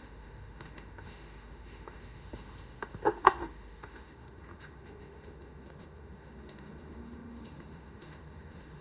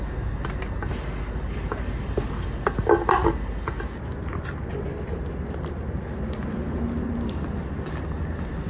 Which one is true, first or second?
second